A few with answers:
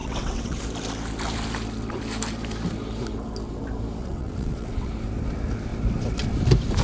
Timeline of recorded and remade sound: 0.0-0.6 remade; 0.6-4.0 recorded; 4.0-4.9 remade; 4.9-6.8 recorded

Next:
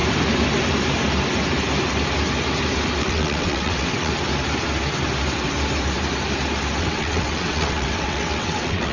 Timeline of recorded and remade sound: 0.0-3.0 recorded; 3.0-4.1 remade; 4.1-6.8 recorded; 6.8-8.9 remade

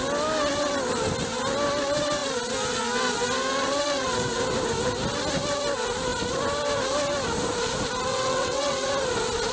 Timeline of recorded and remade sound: 0.0-8.1 recorded; 8.1-8.9 remade; 8.9-9.5 recorded

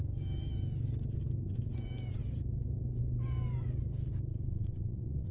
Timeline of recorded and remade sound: 0.0-4.3 recorded; 4.3-5.3 remade

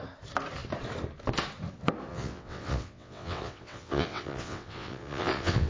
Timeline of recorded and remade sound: 0.0-2.1 recorded; 2.1-5.7 remade

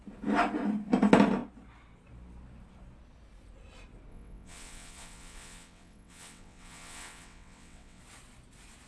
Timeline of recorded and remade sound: 0.0-4.1 recorded; 4.1-8.0 remade; 8.0-8.9 recorded